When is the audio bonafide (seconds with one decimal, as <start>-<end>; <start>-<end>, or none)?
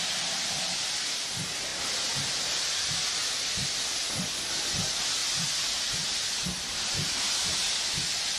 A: 0.0-8.4